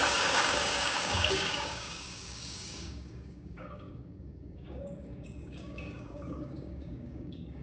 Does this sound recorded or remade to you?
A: remade